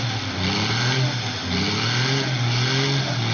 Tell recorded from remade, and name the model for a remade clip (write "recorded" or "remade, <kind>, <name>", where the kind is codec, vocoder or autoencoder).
recorded